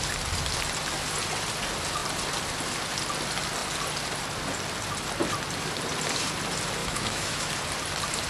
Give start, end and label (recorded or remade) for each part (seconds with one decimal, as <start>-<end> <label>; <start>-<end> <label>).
0.0-6.8 recorded; 6.8-7.5 remade; 7.5-8.3 recorded